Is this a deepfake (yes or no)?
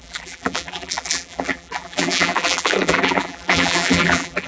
yes